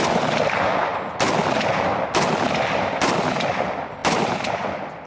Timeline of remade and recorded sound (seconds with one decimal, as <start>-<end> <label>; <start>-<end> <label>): 0.0-4.0 recorded; 4.0-5.1 remade